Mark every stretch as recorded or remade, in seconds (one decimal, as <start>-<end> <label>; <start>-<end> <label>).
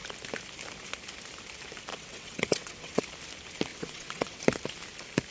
0.0-1.9 recorded; 1.9-3.0 remade; 3.0-3.7 recorded; 3.7-4.4 remade; 4.4-5.3 recorded